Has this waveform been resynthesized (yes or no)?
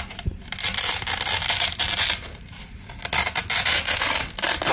no